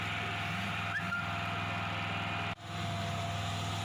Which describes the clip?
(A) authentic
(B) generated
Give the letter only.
A